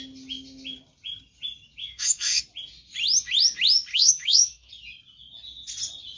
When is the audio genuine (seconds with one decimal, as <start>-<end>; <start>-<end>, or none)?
0.0-1.8; 2.4-3.9; 4.7-6.2